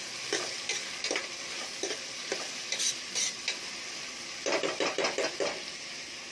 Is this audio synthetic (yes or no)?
no